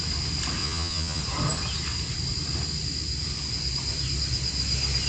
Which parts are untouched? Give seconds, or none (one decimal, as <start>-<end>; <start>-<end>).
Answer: 0.0-0.6; 1.2-5.1